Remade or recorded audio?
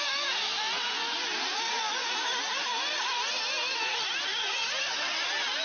recorded